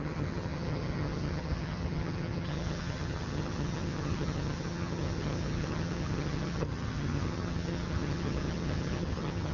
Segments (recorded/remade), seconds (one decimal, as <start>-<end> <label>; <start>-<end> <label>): 0.0-9.5 remade